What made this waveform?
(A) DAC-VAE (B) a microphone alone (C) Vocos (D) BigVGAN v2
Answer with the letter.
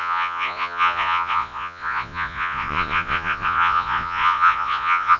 C